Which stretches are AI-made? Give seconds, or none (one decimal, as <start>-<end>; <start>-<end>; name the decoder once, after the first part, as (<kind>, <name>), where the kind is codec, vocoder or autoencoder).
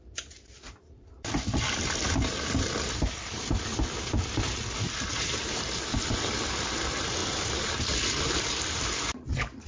none